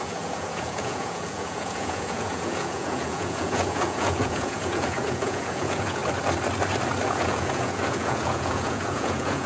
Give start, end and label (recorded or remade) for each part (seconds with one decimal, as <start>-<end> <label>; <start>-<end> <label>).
0.0-6.0 remade; 6.0-7.1 recorded; 7.1-9.5 remade